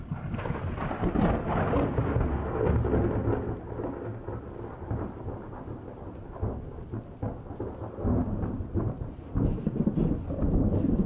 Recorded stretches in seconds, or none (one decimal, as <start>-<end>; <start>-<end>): 0.0-11.1